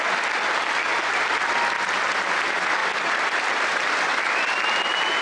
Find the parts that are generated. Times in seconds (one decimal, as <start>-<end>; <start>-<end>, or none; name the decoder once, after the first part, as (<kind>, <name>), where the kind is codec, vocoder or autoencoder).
none